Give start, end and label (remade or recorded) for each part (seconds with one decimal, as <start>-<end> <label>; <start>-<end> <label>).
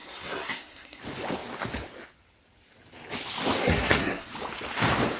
0.0-1.0 remade; 1.0-3.6 recorded; 3.6-4.3 remade; 4.3-5.2 recorded